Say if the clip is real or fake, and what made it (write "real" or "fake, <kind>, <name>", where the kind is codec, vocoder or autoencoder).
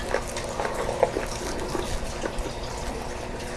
real